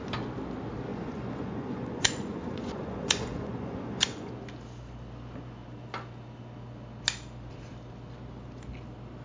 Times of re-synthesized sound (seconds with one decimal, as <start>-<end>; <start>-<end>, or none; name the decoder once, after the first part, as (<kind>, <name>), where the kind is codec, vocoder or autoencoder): 0.9-4.3 (vocoder, Vocos)